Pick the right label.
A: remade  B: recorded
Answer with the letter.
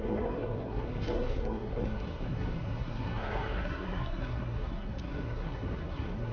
A